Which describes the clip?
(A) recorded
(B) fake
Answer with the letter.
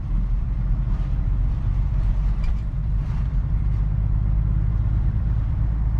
B